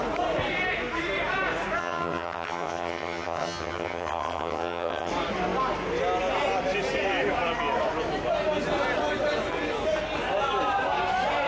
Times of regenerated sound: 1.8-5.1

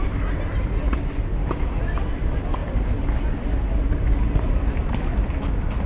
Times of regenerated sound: none

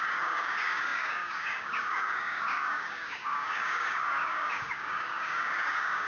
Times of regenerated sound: 0.0-6.1

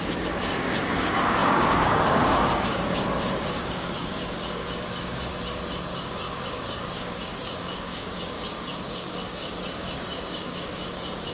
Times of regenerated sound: 0.0-5.3; 6.0-11.3

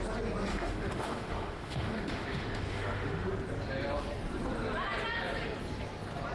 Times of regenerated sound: 0.5-3.3

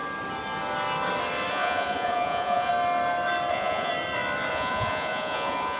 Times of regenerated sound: 1.5-2.7; 3.5-3.9; 4.5-5.8